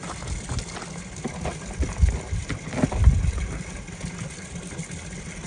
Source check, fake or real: real